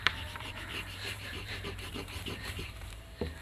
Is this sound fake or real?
fake